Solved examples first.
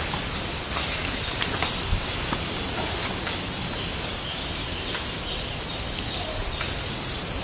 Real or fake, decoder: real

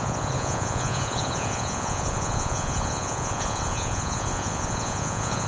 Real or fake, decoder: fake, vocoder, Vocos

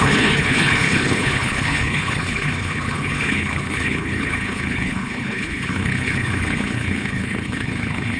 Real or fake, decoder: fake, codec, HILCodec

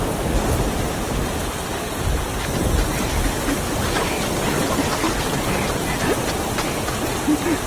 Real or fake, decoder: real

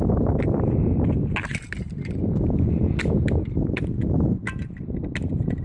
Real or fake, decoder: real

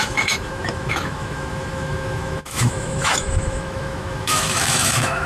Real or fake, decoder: fake, autoencoder, DAC-VAE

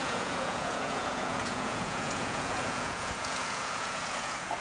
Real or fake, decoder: fake, vocoder, Vocos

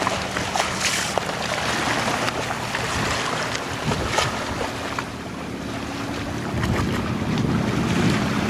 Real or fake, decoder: real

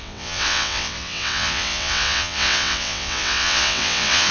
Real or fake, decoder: fake, vocoder, WaveNeXt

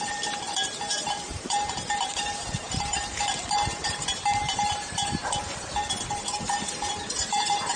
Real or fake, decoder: fake, vocoder, BigVGAN v2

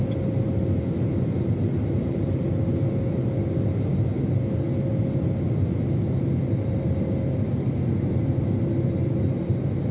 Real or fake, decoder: real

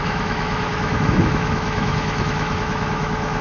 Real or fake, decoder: fake, autoencoder, DAC-VAE